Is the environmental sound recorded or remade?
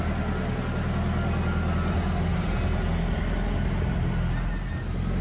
recorded